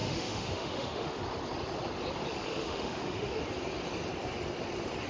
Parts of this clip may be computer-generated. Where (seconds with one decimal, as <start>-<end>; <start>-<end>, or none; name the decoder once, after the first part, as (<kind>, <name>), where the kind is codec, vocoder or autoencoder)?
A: 0.0-1.2 (autoencoder, DAC-VAE); 2.5-3.4